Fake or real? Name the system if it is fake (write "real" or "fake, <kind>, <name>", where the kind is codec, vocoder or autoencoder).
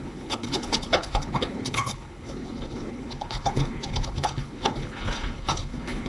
fake, codec, HILCodec